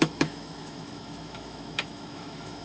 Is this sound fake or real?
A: fake